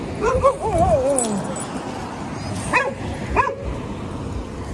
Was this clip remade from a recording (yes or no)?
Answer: no